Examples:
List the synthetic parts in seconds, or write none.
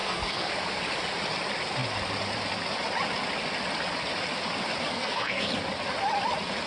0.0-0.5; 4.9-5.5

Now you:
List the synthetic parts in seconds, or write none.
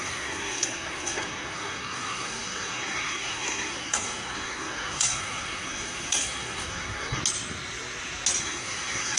0.0-7.2; 8.4-9.2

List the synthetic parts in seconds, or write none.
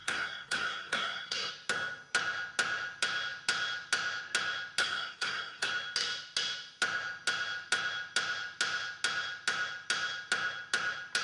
0.0-1.5; 4.8-5.7